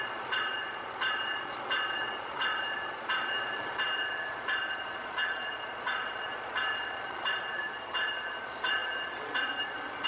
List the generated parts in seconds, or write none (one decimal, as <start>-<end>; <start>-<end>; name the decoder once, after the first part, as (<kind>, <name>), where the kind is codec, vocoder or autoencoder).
0.0-10.1 (vocoder, Vocos)